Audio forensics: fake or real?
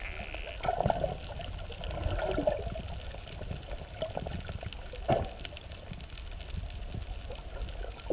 real